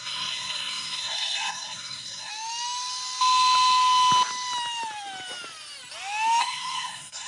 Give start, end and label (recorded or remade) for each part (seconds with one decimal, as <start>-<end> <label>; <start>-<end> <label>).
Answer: 0.0-2.3 remade; 2.3-6.4 recorded; 6.4-7.3 remade